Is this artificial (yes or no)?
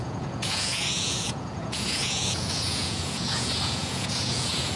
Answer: yes